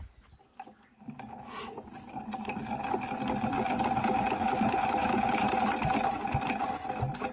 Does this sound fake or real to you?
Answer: real